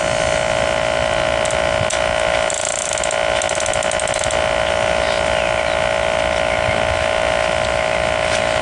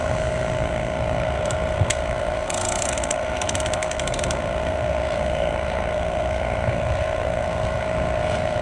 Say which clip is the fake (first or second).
second